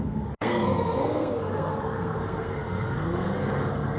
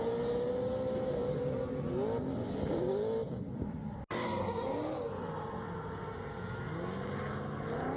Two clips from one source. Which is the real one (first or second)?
second